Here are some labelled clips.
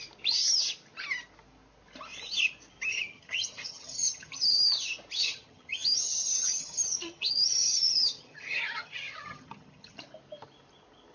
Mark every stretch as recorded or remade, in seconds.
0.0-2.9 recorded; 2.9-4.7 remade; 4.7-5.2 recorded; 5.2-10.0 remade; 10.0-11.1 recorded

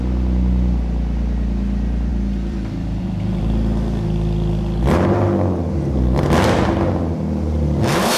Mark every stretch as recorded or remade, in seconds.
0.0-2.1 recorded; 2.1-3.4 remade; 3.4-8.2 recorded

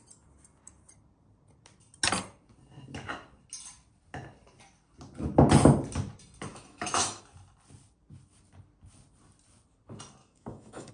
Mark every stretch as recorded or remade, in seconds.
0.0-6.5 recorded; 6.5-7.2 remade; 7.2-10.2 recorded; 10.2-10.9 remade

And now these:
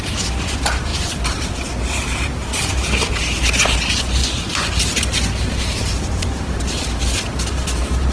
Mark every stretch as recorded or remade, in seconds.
0.0-4.2 recorded; 4.2-4.7 remade; 4.7-8.1 recorded

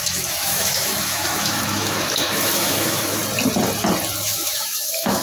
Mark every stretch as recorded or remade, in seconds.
0.0-3.2 remade; 3.2-4.2 recorded; 4.2-5.2 remade

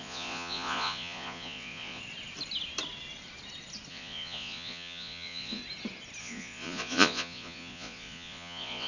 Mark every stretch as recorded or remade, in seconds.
0.0-2.0 remade; 2.0-3.9 recorded; 3.9-5.6 remade; 5.6-6.2 recorded; 6.2-8.9 remade

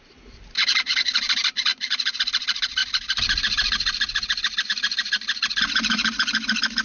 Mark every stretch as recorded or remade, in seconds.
0.0-6.8 recorded